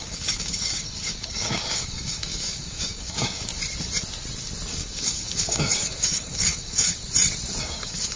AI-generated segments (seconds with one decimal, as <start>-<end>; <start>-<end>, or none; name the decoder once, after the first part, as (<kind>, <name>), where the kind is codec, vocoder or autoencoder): 0.0-3.5 (codec, DAC); 4.7-7.0; 7.6-8.2